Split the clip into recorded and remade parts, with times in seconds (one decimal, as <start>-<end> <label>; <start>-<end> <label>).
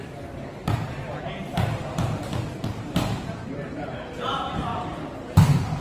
0.0-4.7 remade; 4.7-5.3 recorded; 5.3-5.8 remade